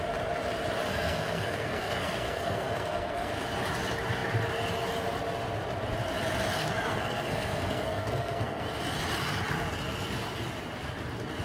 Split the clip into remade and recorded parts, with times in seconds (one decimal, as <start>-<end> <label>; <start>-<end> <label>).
0.0-0.9 recorded; 0.9-3.3 remade; 3.3-6.6 recorded; 6.6-8.7 remade; 8.7-11.4 recorded